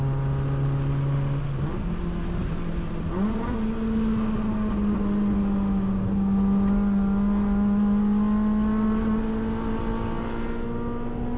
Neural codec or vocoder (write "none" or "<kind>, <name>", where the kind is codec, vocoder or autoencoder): none